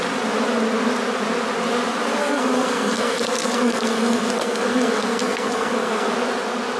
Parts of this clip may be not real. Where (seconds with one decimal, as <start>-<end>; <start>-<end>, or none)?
2.2-6.1